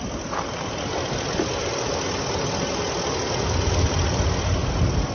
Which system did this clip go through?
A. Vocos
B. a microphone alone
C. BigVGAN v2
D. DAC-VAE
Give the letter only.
B